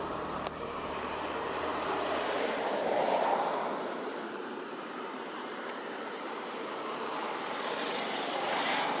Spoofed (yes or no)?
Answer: yes